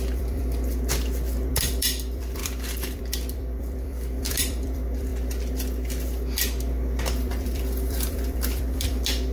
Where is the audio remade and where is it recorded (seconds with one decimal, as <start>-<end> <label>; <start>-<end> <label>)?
0.0-0.4 remade; 0.4-1.5 recorded; 1.5-5.1 remade; 5.1-7.0 recorded; 7.0-9.3 remade